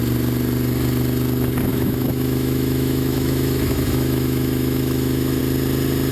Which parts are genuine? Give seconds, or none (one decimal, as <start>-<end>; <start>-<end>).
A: 0.0-1.7; 5.4-6.1